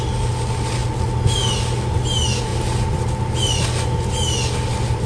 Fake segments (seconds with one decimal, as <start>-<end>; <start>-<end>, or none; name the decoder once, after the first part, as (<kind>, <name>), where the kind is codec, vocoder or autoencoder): none